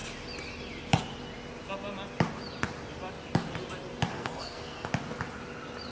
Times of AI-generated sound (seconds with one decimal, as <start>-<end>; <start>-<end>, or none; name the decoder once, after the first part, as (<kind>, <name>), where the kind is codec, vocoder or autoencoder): 4.1-4.9 (codec, SNAC)

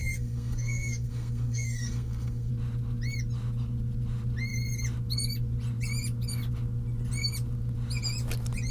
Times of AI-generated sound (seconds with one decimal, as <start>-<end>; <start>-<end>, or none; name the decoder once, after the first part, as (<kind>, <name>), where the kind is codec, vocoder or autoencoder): 0.0-2.5 (codec, SNAC)

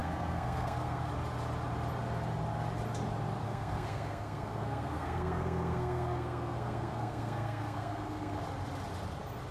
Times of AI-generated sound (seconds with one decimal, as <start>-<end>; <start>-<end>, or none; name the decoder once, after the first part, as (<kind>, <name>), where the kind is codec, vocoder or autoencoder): 0.0-1.1 (codec, SNAC); 3.4-8.4